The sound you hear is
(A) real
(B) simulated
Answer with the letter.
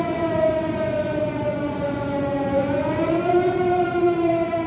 B